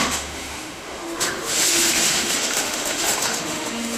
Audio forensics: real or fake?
fake